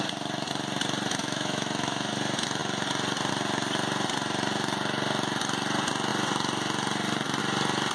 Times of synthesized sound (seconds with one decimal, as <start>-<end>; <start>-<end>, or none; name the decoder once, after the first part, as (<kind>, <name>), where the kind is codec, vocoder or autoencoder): 1.2-2.1 (autoencoder, DAC-VAE)